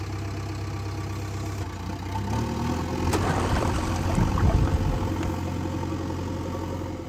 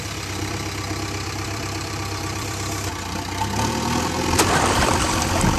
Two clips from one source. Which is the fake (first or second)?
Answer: second